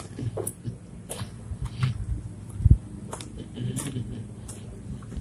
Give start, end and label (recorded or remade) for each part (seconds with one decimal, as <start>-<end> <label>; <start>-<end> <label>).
0.0-5.2 recorded